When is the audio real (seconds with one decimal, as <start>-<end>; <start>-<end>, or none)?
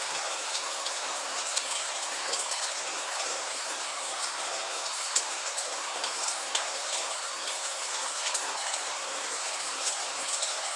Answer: none